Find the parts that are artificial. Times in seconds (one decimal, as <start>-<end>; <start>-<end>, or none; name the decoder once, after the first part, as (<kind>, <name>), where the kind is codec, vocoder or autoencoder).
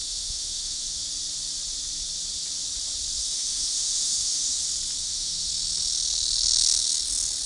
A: 0.0-1.0 (autoencoder, DAC-VAE); 3.2-4.6; 5.0-5.5